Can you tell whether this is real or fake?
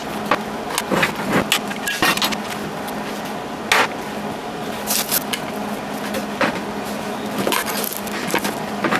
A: real